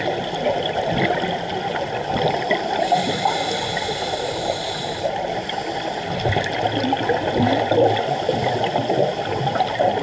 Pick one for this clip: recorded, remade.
recorded